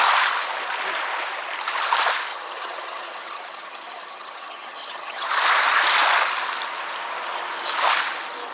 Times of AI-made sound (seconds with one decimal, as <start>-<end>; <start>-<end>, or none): 2.3-5.3